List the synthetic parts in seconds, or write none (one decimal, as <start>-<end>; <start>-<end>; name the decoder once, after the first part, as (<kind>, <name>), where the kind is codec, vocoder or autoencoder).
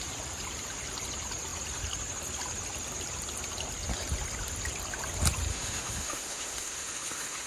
5.5-7.5 (autoencoder, DAC-VAE)